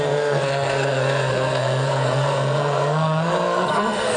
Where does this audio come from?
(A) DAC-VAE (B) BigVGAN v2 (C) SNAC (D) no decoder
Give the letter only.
C